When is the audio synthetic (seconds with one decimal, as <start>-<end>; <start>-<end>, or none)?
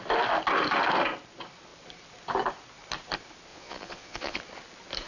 3.5-4.4